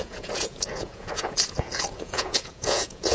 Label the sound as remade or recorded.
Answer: remade